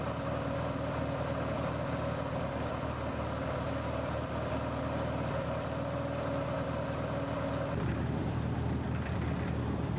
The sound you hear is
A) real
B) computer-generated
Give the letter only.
A